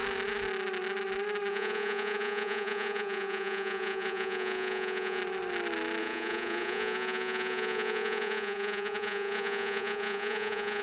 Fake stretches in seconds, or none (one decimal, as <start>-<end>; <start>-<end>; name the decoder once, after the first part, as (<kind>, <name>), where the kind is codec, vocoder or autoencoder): 1.5-5.2 (vocoder, Vocos); 6.0-10.8